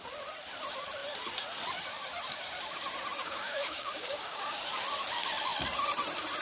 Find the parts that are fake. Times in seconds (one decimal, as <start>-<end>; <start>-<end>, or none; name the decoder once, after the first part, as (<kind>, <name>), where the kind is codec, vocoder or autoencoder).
3.2-4.6 (codec, DAC)